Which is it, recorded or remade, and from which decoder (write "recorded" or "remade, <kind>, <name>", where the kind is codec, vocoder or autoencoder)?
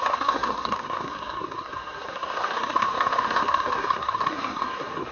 remade, codec, SNAC